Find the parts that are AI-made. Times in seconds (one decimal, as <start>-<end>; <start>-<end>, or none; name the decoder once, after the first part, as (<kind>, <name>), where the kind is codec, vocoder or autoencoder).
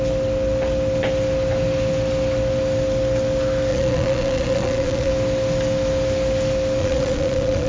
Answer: 3.7-5.1 (vocoder, Vocos); 6.8-7.7